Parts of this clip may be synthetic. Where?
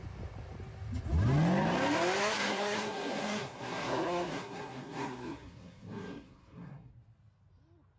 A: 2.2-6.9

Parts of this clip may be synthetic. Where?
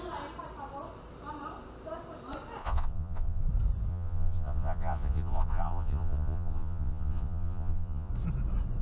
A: 2.6-3.4; 3.9-8.1